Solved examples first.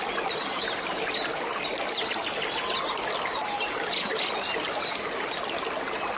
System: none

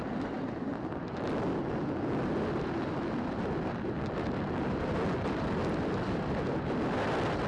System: none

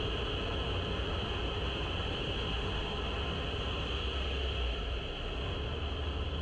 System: none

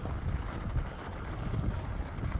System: none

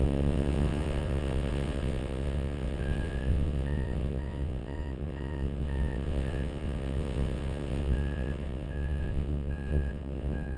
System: vocoder, WaveNeXt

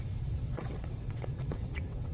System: vocoder, WaveNeXt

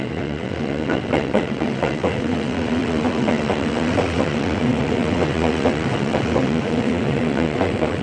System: vocoder, WaveNeXt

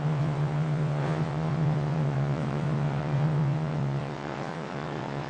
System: vocoder, WaveNeXt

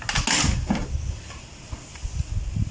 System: none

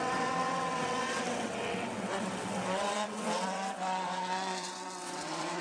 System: vocoder, WaveNeXt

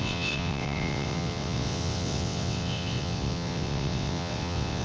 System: vocoder, WaveNeXt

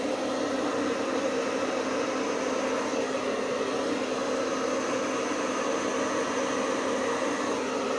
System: none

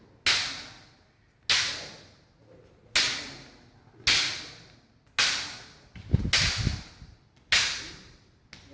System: none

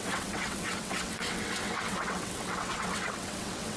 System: vocoder, WaveNeXt